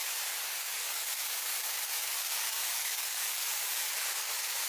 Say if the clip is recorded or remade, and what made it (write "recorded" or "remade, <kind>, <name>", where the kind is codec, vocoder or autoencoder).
remade, codec, DAC